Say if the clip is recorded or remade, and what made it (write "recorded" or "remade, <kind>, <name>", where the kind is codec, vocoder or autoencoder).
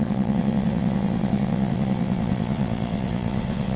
remade, vocoder, WaveNeXt